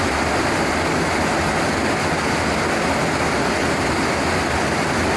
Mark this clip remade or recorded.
recorded